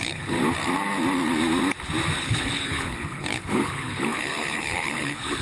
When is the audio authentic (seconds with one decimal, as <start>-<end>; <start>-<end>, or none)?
0.4-2.2